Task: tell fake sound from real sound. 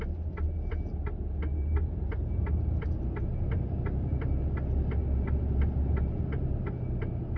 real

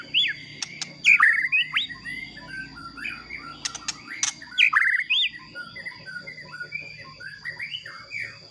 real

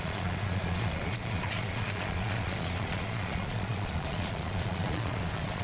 fake